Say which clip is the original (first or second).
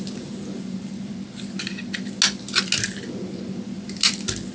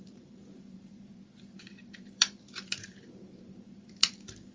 first